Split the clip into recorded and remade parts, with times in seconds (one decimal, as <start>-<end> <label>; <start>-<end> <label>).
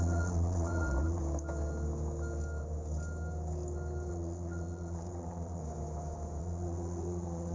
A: 0.0-1.2 remade; 1.2-4.1 recorded; 4.1-5.6 remade; 5.6-6.4 recorded; 6.4-7.5 remade